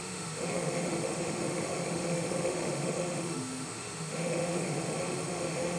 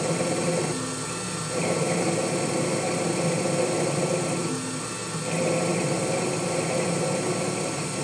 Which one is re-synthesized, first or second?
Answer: first